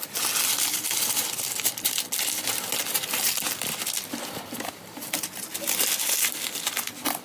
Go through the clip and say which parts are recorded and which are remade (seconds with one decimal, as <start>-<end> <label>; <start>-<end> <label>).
0.0-7.2 recorded